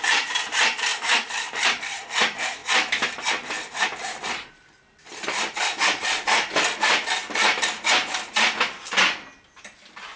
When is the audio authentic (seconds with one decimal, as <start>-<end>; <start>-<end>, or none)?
0.9-1.9; 2.6-4.2; 7.2-10.2